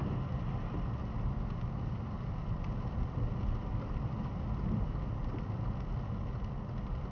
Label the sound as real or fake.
real